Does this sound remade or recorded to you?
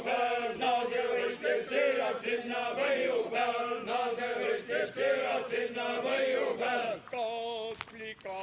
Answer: recorded